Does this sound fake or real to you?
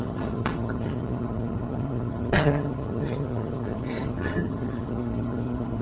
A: fake